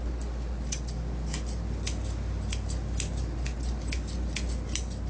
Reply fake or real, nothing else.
real